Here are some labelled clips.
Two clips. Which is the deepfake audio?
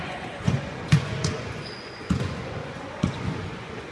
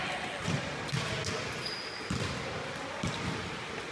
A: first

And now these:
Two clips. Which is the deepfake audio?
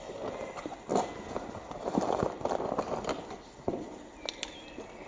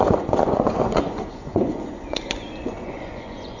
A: second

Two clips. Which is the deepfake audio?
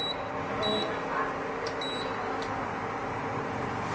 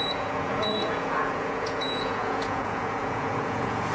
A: second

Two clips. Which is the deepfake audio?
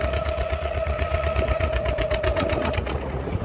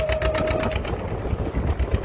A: first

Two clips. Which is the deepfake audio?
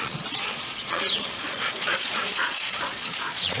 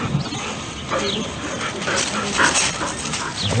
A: first